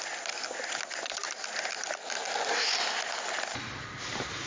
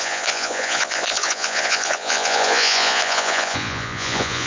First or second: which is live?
first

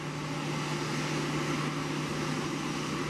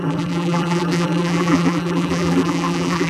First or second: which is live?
first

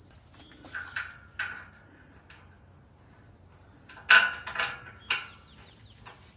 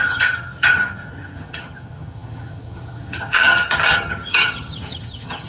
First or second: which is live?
first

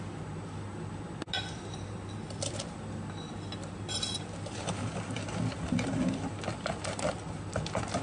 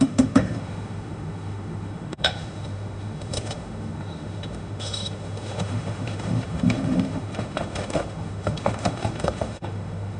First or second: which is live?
first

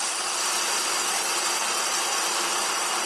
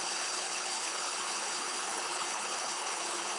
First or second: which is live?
first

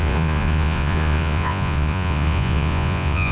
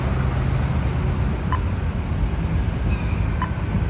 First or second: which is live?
second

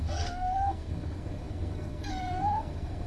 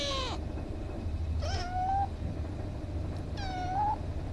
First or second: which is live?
second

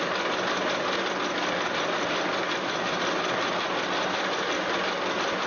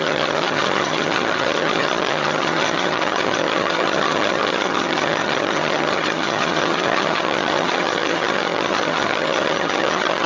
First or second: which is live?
first